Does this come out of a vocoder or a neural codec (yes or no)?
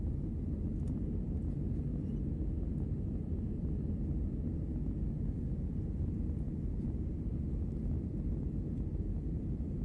no